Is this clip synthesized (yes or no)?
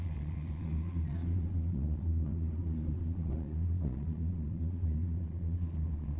yes